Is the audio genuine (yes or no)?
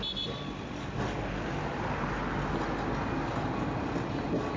yes